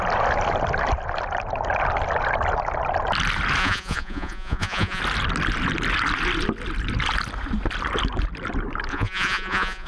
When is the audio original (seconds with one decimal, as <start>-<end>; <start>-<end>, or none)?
0.0-3.6; 5.0-8.9